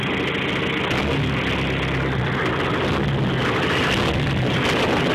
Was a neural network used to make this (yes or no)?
no